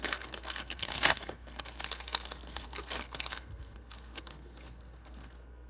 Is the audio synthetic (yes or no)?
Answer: yes